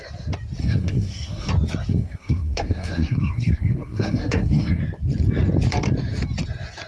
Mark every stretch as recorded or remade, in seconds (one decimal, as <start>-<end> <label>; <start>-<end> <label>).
0.0-0.6 recorded; 0.6-1.5 remade; 1.5-1.9 recorded; 1.9-4.8 remade; 4.8-6.9 recorded